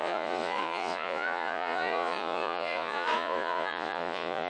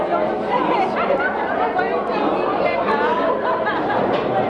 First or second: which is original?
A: second